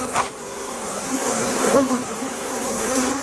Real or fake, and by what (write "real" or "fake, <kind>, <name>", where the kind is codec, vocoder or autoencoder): fake, codec, SNAC